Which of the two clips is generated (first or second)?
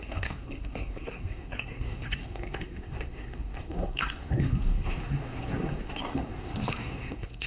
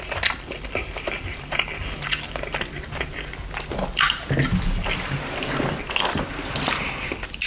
first